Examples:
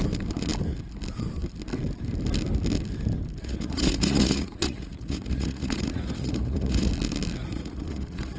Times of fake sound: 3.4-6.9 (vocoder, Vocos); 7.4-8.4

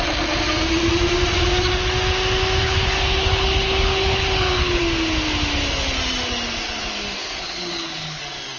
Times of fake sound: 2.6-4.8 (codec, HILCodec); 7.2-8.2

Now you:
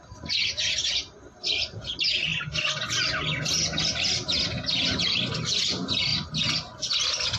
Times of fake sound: none

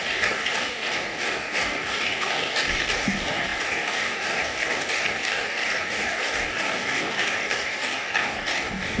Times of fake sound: 0.0-9.0 (codec, DAC)

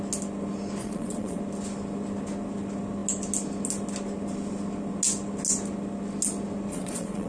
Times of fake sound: 0.8-1.4 (vocoder, Vocos); 6.7-7.3